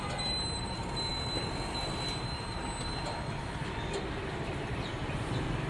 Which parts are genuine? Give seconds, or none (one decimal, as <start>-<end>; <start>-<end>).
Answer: 1.1-4.5